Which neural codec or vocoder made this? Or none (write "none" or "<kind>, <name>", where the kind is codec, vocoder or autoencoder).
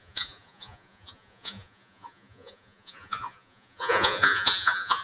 vocoder, Vocos